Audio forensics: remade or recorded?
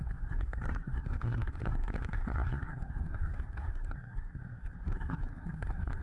remade